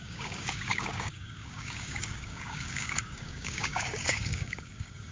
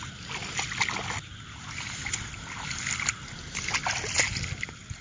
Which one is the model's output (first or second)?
first